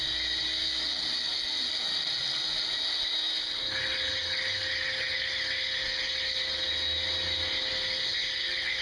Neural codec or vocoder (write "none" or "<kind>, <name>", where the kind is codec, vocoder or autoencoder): none